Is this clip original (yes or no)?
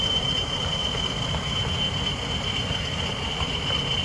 yes